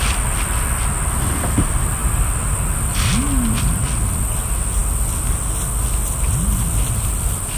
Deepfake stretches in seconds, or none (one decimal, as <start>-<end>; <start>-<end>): none